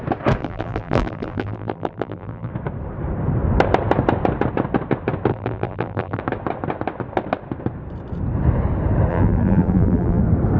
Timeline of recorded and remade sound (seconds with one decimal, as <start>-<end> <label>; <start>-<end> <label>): 0.0-0.4 recorded; 0.4-2.5 remade; 2.5-5.3 recorded; 5.3-6.2 remade; 6.2-9.1 recorded; 9.1-10.2 remade; 10.2-10.6 recorded